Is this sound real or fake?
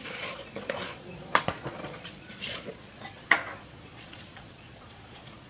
fake